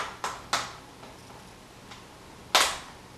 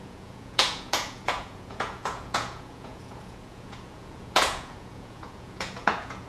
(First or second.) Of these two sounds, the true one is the first